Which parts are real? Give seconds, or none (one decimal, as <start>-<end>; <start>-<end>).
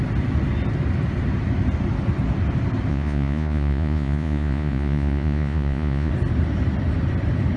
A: 0.0-2.9; 6.1-7.6